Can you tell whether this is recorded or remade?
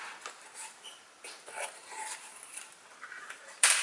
remade